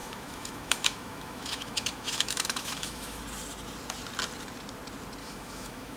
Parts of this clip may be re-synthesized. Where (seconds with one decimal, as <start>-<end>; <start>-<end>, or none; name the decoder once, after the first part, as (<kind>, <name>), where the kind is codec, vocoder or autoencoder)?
0.0-3.2 (autoencoder, DAC-VAE); 5.2-6.0